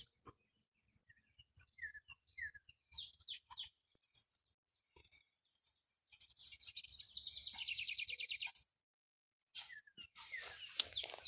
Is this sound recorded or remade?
recorded